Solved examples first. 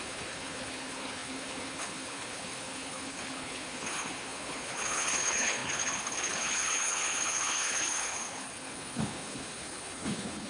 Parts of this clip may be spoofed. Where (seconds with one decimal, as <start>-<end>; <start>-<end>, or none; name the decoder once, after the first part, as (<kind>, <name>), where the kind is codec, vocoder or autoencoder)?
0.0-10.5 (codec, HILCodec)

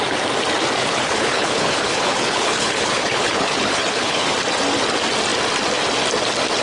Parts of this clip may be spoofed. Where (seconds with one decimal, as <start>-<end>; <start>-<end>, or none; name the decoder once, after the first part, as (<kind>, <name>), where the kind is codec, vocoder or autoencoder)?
0.8-4.3 (codec, HILCodec)

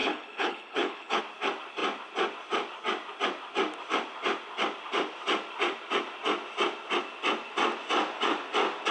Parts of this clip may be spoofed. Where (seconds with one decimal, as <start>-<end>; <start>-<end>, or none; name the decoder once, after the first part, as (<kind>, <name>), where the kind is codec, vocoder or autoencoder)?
0.0-1.2 (codec, HILCodec)

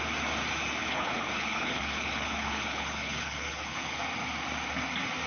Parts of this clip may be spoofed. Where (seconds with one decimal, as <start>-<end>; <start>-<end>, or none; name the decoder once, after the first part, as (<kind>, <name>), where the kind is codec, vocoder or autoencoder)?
0.8-4.0 (codec, HILCodec)

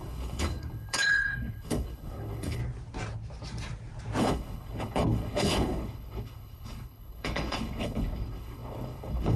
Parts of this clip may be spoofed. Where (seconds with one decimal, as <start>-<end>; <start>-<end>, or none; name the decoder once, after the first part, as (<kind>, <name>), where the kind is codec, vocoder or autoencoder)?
0.0-2.6 (codec, HILCodec); 4.2-9.4